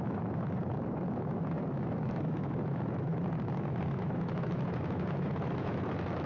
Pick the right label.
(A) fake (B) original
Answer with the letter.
A